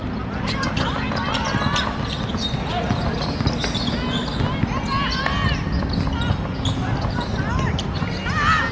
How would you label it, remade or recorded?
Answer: recorded